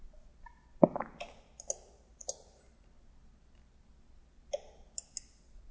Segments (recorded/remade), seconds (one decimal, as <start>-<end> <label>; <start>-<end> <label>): 0.0-5.7 recorded